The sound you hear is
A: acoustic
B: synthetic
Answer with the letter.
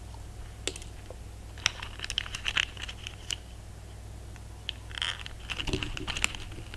A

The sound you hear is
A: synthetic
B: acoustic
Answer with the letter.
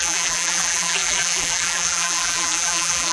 A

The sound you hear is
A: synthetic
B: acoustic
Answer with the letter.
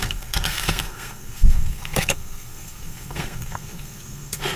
A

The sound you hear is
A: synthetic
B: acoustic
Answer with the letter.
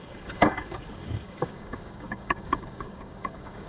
A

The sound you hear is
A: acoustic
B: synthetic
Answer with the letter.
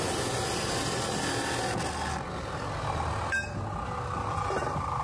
A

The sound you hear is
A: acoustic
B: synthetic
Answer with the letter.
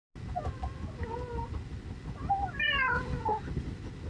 A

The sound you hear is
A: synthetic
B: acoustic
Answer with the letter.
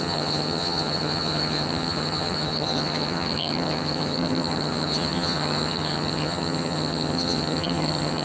A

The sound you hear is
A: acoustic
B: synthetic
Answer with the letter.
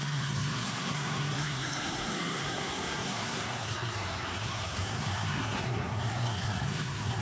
B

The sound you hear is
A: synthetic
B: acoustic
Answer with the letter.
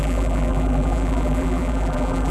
A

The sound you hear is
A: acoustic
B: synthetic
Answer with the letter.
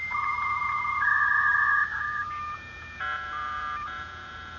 B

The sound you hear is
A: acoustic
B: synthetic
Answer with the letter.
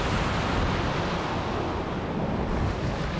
A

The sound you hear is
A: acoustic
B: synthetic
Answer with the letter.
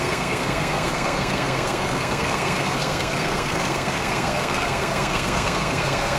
B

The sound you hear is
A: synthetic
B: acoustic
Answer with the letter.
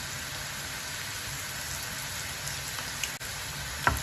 B